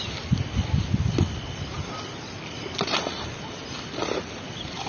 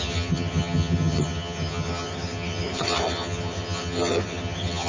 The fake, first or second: second